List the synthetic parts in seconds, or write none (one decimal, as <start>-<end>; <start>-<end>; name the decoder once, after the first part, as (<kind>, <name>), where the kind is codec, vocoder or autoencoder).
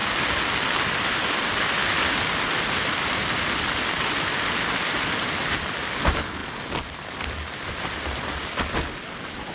none